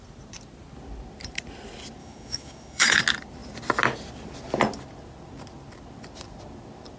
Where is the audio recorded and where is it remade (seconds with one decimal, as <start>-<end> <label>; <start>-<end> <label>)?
0.0-2.0 recorded; 2.0-3.0 remade; 3.0-7.0 recorded